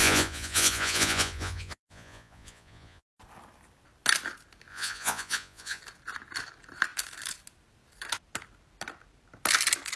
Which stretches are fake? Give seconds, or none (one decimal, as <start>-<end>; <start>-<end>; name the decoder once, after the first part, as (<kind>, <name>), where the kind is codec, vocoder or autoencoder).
0.0-3.2 (vocoder, Vocos); 4.7-5.8